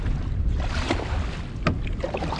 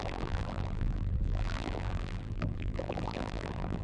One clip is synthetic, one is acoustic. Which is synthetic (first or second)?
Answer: second